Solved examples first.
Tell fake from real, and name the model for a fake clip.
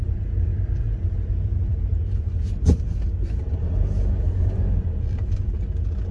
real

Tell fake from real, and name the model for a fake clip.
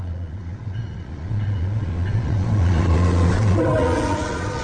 fake, vocoder, Vocos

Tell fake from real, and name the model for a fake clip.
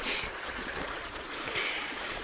fake, vocoder, Vocos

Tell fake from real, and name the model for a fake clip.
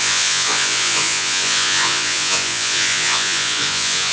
fake, vocoder, Vocos